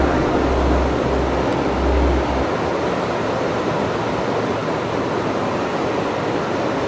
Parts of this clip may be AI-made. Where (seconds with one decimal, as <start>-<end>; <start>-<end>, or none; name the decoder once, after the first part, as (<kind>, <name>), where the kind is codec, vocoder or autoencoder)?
none